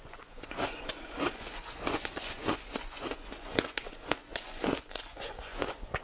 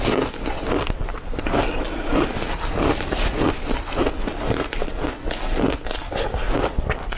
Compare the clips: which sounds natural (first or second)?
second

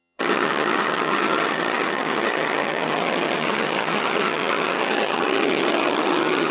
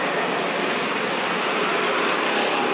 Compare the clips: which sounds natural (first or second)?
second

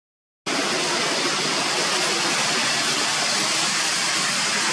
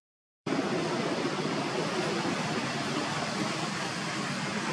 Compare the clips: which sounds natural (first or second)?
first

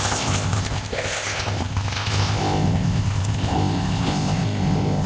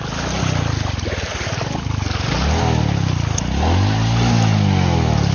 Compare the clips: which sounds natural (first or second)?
second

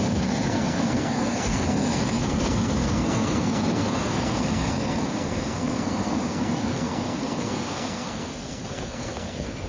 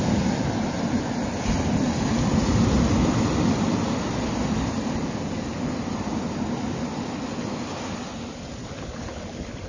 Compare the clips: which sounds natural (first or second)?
second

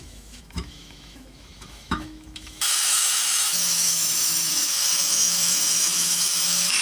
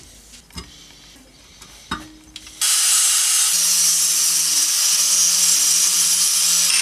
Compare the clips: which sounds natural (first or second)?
second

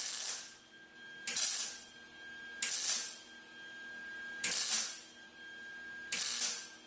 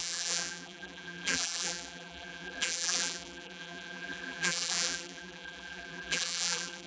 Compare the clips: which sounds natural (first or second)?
first